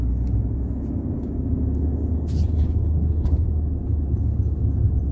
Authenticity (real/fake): real